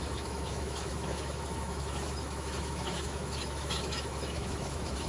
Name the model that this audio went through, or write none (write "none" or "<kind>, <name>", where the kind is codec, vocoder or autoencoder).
autoencoder, DAC-VAE